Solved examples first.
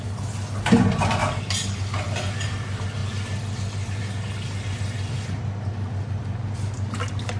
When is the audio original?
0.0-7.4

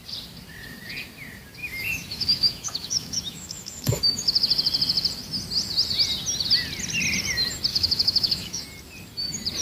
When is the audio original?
0.0-1.6; 4.2-7.7; 8.6-9.6

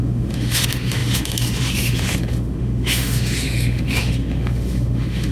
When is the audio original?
none